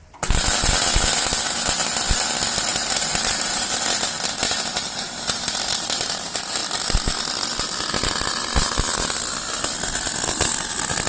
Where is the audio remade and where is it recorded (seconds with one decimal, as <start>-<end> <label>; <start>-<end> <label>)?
0.0-2.7 recorded; 2.7-4.0 remade; 4.0-4.4 recorded; 4.4-6.0 remade; 6.0-11.1 recorded

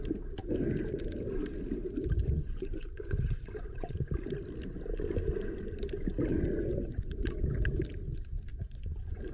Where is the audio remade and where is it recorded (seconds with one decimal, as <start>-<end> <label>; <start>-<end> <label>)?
0.0-2.2 recorded; 2.2-4.1 remade; 4.1-6.6 recorded; 6.6-7.8 remade; 7.8-8.5 recorded; 8.5-9.3 remade